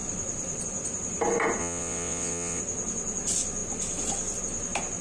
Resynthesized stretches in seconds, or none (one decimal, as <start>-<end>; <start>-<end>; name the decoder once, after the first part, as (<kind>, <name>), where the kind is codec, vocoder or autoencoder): 1.6-2.6 (vocoder, WaveNeXt)